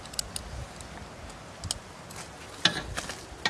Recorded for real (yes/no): yes